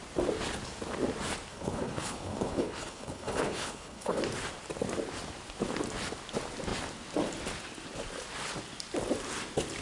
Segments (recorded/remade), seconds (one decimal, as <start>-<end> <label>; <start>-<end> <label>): 0.0-1.5 recorded; 1.5-4.2 remade; 4.2-9.8 recorded